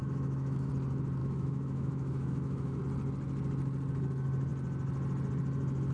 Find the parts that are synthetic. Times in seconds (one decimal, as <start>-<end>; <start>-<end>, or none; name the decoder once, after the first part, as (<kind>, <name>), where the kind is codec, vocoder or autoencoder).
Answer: 0.0-0.7 (autoencoder, DAC-VAE); 1.2-2.8